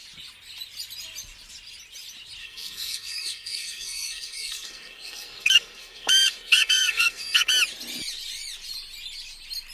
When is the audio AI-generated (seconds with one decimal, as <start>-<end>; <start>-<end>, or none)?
2.4-7.5